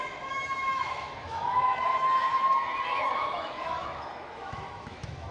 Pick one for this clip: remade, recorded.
remade